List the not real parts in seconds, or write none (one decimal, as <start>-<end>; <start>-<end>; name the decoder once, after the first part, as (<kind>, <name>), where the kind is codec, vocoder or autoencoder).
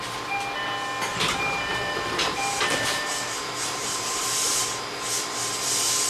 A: 1.1-4.6 (vocoder, BigVGAN v2)